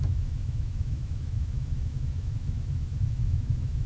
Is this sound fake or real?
fake